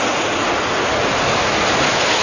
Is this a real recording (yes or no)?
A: yes